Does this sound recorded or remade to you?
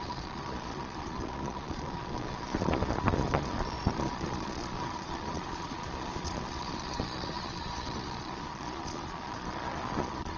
remade